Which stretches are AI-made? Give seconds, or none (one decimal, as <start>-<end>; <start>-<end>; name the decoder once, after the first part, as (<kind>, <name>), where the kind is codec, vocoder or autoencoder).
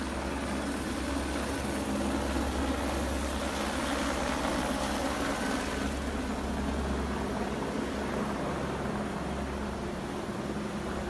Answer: none